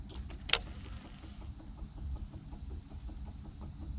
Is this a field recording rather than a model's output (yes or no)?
yes